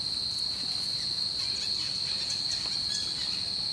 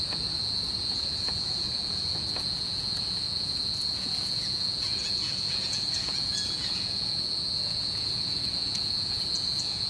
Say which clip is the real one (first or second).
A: first